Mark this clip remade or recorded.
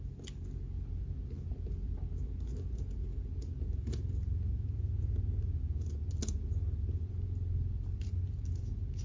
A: recorded